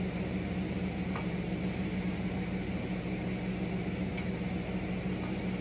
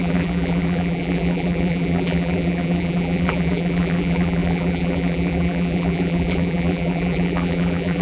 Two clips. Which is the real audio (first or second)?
first